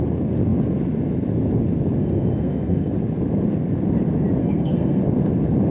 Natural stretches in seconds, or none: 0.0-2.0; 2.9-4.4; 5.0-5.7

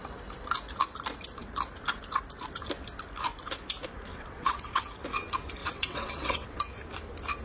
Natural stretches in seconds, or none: 0.0-4.1; 4.8-5.6; 6.6-7.4